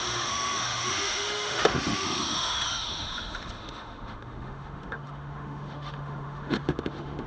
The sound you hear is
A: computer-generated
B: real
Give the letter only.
A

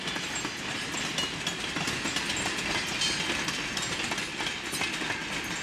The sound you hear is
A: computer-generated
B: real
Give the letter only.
B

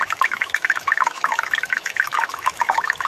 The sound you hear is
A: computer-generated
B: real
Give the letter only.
A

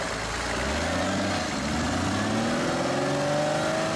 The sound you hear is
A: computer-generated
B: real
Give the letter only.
B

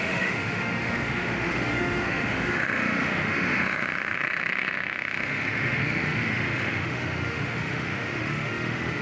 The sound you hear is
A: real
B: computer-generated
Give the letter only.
B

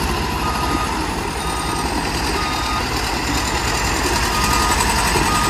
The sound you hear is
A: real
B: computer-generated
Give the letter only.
A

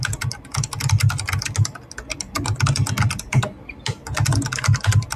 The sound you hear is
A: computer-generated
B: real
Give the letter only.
B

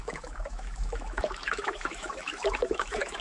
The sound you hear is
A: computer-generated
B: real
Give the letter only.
A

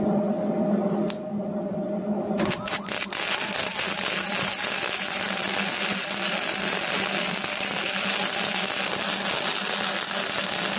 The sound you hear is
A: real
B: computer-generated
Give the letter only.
A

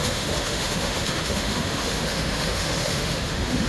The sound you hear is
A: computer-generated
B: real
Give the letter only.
A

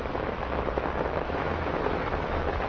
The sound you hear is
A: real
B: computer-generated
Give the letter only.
B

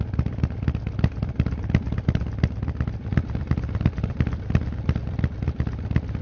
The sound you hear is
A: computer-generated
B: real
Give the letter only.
B